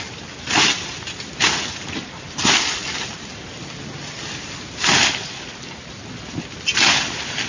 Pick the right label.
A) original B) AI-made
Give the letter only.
A